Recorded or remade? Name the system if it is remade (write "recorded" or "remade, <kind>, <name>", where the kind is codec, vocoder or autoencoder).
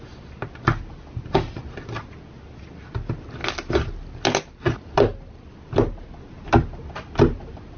recorded